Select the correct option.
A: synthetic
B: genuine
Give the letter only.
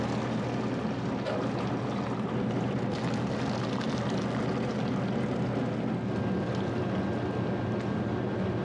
B